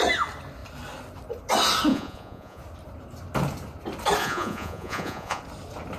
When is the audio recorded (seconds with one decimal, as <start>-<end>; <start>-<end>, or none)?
0.0-1.9; 2.6-4.2; 5.4-6.0